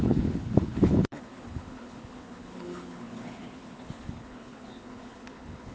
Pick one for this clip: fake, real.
fake